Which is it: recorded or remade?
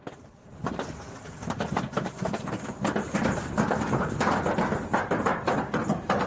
recorded